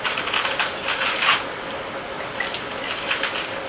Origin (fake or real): real